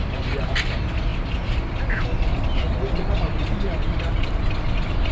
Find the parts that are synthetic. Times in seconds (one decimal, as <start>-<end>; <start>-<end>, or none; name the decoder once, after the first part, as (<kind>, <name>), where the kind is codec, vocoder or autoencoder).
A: none